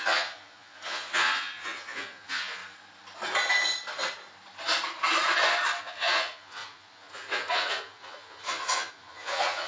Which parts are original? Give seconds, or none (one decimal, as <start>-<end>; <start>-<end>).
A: 2.6-5.8